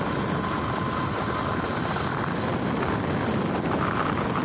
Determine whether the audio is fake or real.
real